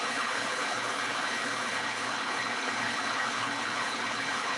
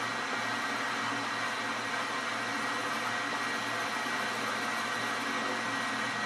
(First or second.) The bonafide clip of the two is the second